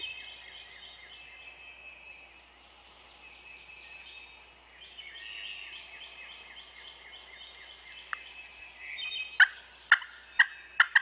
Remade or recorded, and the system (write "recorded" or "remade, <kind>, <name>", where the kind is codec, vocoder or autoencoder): recorded